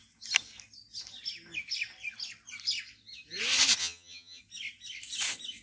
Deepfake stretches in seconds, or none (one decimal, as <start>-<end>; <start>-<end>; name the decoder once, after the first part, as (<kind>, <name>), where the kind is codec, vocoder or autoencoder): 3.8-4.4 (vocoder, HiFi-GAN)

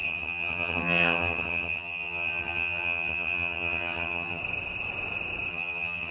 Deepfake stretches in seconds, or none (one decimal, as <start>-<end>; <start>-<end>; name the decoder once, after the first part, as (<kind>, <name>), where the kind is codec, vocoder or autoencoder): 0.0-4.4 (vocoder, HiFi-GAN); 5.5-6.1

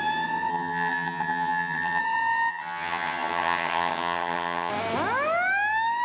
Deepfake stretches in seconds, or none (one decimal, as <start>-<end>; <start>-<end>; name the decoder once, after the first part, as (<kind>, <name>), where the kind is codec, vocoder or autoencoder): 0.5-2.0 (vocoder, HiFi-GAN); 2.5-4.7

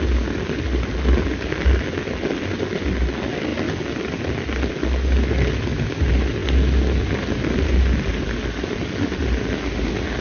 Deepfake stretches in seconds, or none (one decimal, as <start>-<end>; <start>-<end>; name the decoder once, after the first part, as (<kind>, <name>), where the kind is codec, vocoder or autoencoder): none